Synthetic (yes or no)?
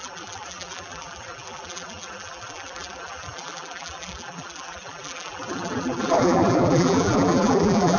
yes